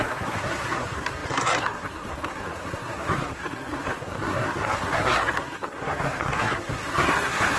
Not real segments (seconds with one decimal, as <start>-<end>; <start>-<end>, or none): 0.0-7.6